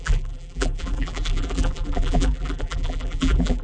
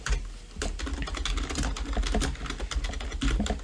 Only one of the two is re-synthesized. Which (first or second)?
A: first